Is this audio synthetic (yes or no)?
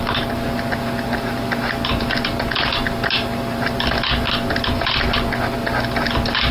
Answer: no